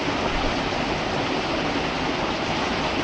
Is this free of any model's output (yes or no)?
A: yes